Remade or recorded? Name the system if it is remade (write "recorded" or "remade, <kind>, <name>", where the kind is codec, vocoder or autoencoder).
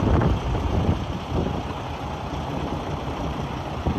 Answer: remade, vocoder, BigVGAN v2